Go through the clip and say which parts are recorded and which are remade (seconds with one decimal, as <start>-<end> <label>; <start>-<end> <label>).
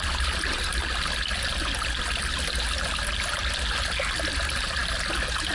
0.0-5.5 recorded